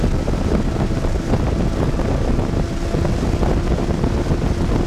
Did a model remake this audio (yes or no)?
no